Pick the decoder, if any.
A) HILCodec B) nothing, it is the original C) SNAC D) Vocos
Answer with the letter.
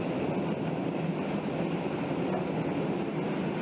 B